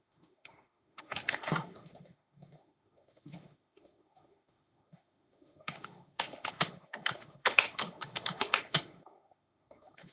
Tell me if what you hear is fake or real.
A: fake